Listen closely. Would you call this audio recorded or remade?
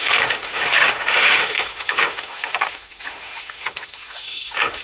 remade